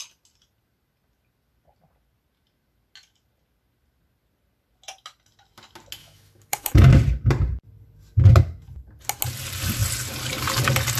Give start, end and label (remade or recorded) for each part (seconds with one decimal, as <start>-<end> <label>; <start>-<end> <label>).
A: 0.0-6.0 recorded; 6.0-6.9 remade; 6.9-11.0 recorded